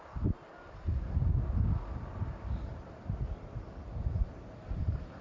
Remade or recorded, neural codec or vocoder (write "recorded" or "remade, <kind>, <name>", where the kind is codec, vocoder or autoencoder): recorded